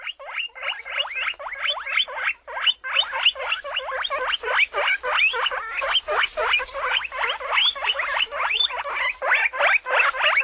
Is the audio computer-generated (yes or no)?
no